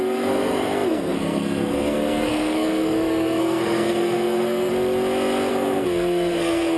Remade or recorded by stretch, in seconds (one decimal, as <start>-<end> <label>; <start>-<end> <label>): 0.0-4.7 remade; 4.7-5.5 recorded; 5.5-6.8 remade